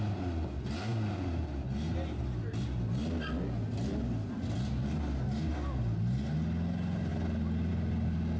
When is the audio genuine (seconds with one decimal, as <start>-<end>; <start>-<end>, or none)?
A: 0.0-8.4